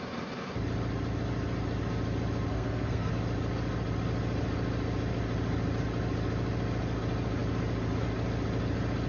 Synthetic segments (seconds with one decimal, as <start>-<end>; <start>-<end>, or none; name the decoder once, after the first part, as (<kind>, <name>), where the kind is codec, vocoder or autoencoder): 2.5-3.1 (codec, SNAC)